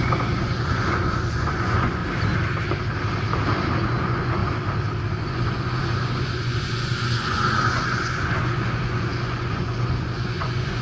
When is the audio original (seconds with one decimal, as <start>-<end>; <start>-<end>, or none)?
2.0-3.8; 4.4-5.2